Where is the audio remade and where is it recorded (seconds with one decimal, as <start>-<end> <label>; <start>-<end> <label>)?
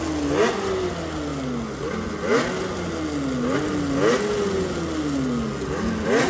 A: 0.0-6.3 recorded